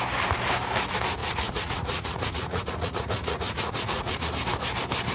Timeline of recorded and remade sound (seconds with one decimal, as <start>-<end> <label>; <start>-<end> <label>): 0.0-1.2 recorded; 1.2-4.3 remade; 4.3-5.1 recorded